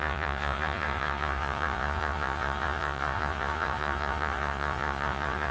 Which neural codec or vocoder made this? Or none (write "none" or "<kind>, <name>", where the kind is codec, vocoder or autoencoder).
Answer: vocoder, Vocos